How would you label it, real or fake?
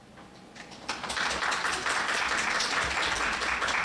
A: real